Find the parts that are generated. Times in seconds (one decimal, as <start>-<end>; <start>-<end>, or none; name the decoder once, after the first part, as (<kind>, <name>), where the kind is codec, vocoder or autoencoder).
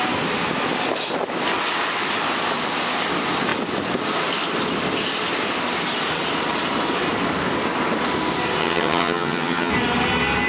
8.6-9.7 (vocoder, HiFi-GAN)